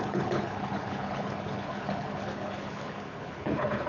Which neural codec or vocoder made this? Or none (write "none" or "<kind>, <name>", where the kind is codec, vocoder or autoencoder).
codec, HILCodec